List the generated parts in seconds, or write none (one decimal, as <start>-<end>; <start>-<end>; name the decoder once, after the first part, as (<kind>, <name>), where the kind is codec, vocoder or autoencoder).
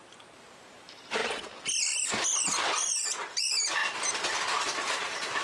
0.0-1.2 (vocoder, BigVGAN v2); 2.9-3.8; 4.4-5.4